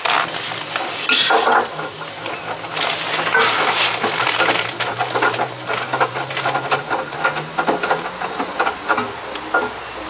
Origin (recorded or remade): recorded